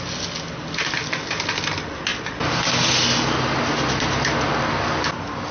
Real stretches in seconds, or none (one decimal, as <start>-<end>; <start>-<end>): 0.0-5.5